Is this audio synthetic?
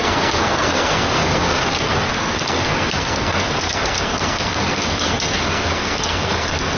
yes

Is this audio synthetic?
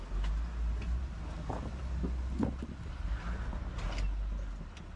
no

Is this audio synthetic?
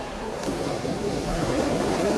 yes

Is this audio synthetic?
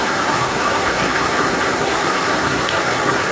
yes